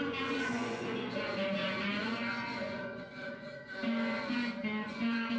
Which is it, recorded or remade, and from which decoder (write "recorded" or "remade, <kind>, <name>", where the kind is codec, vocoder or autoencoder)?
remade, vocoder, Vocos